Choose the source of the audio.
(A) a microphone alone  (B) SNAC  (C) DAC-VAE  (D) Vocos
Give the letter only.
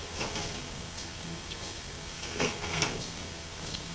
B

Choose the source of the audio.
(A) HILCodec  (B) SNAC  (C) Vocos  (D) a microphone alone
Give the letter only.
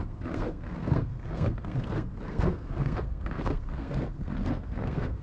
B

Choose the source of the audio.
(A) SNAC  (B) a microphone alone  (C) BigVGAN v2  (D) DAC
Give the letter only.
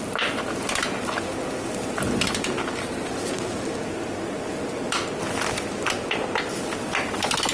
B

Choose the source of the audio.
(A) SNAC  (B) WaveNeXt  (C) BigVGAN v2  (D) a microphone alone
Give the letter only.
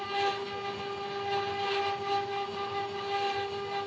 D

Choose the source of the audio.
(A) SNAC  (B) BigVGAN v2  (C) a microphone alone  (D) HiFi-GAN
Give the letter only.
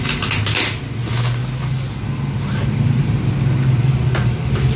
C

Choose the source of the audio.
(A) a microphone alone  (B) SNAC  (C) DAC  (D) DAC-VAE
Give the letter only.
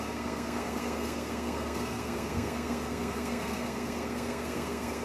B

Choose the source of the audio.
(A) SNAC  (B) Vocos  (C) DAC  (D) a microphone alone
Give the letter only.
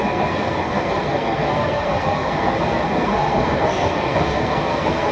A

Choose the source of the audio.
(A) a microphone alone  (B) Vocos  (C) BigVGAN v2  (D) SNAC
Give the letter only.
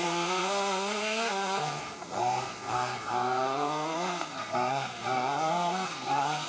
D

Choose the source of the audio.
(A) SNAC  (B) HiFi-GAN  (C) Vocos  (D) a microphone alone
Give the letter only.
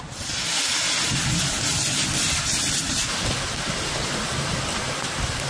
D